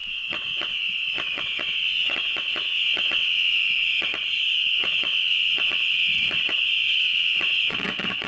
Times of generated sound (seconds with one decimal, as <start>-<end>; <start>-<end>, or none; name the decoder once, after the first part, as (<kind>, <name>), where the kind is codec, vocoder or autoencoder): 0.0-4.1 (vocoder, WaveNeXt); 4.8-6.1; 7.0-8.3